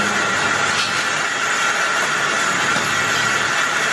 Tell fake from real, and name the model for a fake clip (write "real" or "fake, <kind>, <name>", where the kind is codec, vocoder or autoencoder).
real